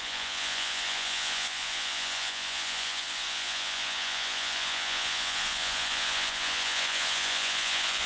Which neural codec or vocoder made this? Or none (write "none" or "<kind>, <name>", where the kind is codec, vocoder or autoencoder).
vocoder, Vocos